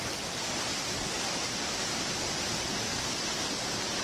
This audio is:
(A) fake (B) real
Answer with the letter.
B